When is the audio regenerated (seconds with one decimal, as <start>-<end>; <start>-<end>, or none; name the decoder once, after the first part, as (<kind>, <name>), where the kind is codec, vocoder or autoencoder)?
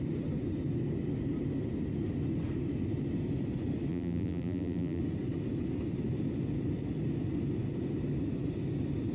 3.9-5.0 (vocoder, BigVGAN v2)